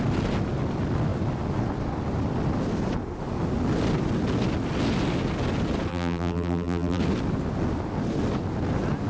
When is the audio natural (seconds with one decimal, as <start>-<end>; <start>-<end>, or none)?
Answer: 0.0-5.9; 7.0-9.1